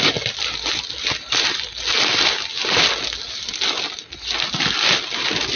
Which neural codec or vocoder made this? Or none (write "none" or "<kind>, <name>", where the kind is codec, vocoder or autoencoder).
none